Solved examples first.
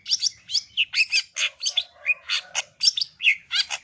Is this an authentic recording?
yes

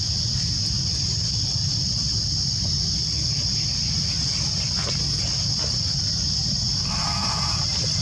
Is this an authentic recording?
yes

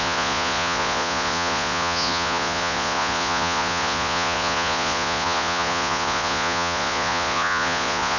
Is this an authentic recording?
no